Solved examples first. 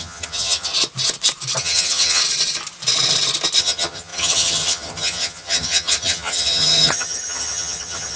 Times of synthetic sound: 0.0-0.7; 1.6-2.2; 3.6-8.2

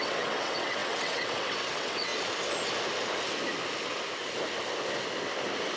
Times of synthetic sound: 0.0-2.1

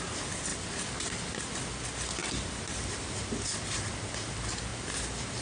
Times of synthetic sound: 0.5-1.4

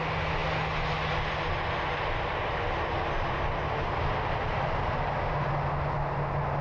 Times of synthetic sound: none

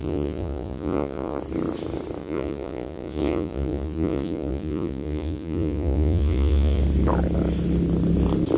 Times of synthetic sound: 0.0-1.4; 2.2-6.8

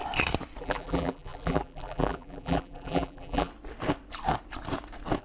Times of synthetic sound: 0.6-3.5

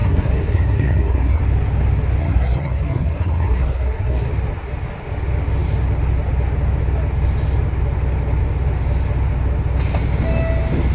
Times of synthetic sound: 0.0-1.4; 2.2-4.3

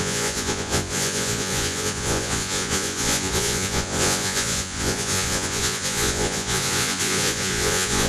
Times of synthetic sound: 0.0-8.1